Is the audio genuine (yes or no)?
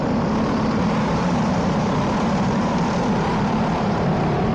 no